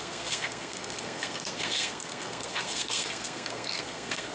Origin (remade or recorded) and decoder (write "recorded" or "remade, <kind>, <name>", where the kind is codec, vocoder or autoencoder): remade, codec, SNAC